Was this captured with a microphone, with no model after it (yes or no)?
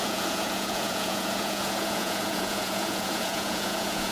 no